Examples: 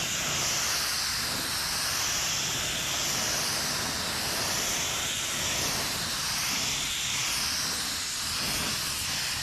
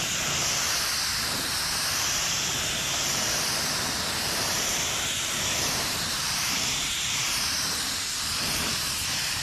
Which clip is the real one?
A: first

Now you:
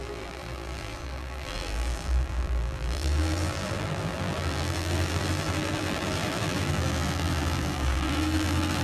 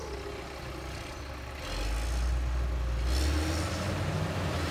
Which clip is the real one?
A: second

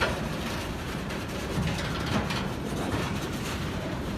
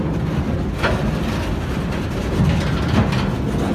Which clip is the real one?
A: second